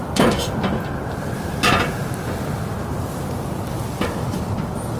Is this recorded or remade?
recorded